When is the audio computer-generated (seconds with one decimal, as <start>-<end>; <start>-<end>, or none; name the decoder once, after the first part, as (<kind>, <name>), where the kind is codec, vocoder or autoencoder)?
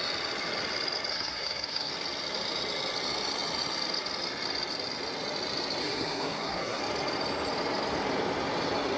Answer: 1.1-1.9 (codec, SNAC); 5.8-6.8